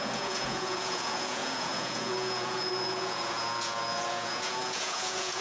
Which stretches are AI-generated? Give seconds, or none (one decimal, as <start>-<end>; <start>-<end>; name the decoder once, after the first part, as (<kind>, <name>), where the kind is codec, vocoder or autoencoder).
0.0-5.4 (vocoder, Vocos)